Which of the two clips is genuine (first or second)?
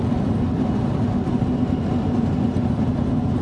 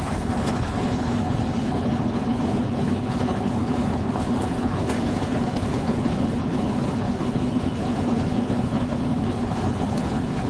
first